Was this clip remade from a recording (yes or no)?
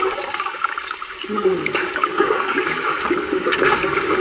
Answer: yes